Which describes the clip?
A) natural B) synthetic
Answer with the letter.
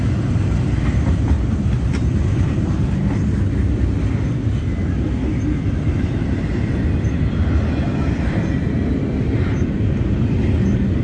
A